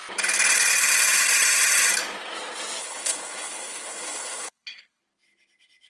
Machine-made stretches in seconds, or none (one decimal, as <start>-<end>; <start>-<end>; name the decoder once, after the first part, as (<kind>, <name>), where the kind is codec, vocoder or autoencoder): 2.8-5.0 (codec, HILCodec)